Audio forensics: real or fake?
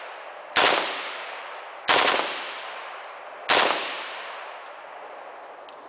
real